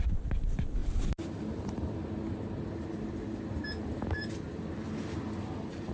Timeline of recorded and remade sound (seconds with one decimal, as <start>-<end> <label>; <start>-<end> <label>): 0.0-0.8 remade; 0.8-3.7 recorded; 3.7-5.9 remade

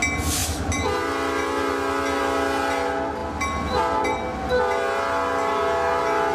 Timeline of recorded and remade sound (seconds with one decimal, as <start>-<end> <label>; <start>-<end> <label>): 0.0-6.3 recorded

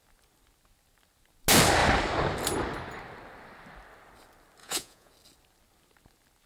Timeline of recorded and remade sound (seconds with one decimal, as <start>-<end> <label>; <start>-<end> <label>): 0.0-4.6 recorded; 4.6-5.1 remade; 5.1-6.5 recorded

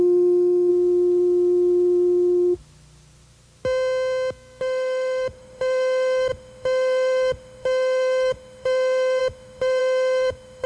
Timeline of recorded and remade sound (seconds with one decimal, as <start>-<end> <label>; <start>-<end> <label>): 0.0-0.7 remade; 0.7-4.6 recorded; 4.6-10.7 remade

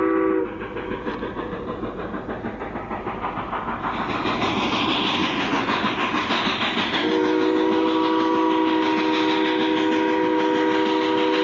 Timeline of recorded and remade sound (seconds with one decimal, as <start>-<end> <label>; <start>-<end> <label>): 0.0-5.2 recorded; 5.2-5.9 remade; 5.9-11.4 recorded